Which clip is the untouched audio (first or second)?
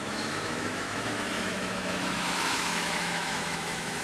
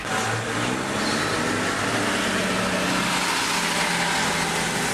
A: second